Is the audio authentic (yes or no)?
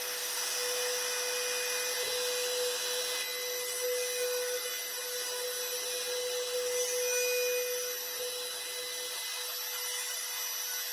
yes